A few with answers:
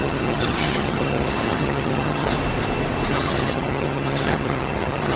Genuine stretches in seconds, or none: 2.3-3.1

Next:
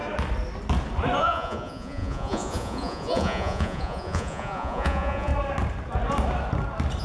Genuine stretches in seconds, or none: 0.0-1.2; 5.3-7.0

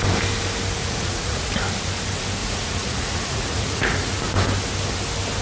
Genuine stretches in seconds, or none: 0.0-0.8; 1.5-2.4; 4.2-5.4